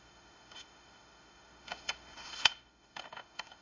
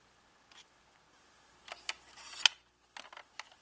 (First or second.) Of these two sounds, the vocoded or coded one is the first